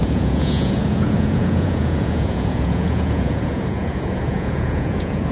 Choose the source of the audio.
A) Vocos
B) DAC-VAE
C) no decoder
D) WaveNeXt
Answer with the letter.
A